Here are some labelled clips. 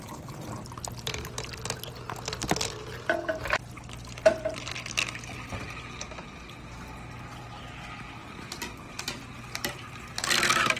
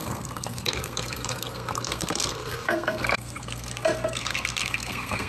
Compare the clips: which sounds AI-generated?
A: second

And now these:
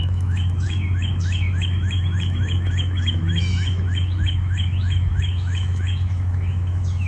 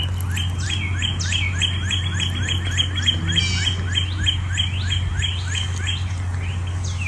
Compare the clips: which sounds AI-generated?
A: first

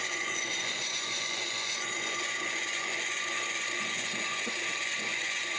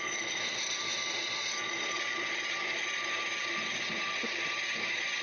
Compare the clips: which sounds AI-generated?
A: first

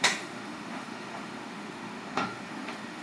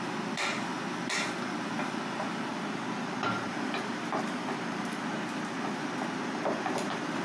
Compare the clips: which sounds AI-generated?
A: first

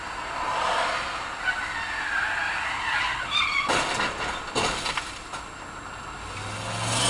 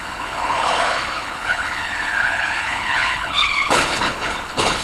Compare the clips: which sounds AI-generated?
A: second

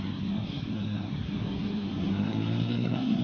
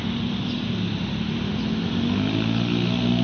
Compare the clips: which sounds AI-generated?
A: first